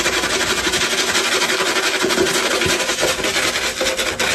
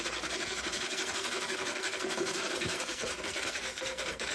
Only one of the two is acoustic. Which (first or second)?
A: first